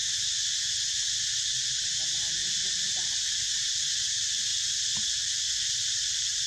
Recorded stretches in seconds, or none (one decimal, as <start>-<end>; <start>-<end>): 0.0-1.2